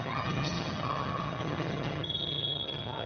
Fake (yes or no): yes